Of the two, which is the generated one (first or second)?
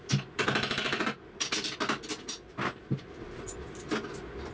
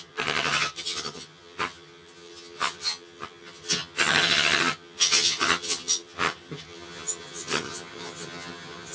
second